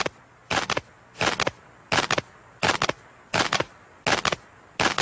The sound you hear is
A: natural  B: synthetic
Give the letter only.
A